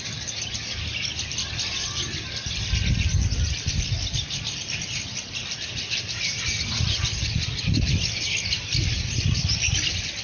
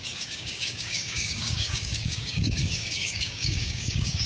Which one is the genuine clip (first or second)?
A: first